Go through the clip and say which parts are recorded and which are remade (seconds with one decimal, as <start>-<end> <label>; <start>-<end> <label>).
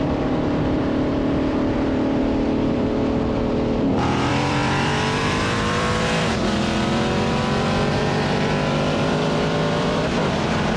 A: 0.0-10.8 remade